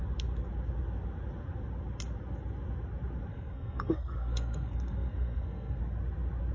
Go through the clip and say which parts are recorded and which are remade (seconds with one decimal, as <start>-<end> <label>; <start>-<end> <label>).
0.0-3.3 recorded; 3.3-5.8 remade; 5.8-6.5 recorded